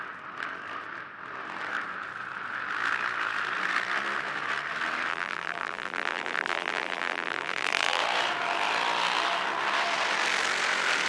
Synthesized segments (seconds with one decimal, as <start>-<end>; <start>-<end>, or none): 5.1-8.0

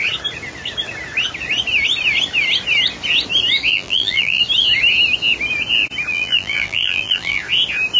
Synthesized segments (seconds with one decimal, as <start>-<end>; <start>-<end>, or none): 3.7-4.4; 6.1-7.4